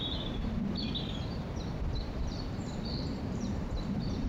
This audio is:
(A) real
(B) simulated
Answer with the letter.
B